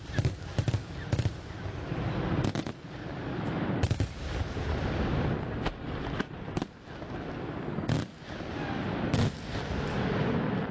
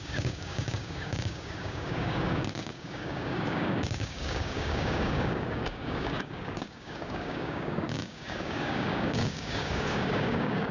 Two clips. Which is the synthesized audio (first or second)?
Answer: second